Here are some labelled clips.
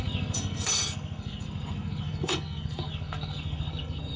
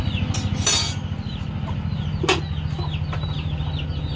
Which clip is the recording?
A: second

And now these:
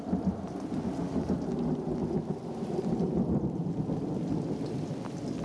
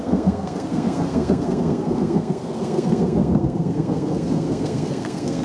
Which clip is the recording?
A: first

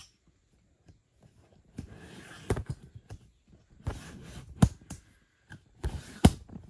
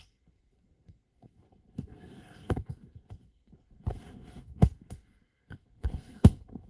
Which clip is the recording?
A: first